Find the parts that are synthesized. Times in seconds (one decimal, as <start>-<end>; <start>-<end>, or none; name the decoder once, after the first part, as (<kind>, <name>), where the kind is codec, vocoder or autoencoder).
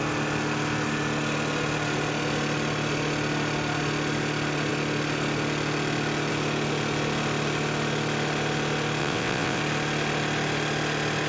9.0-9.6 (vocoder, WaveNeXt)